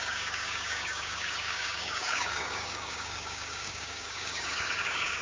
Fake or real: fake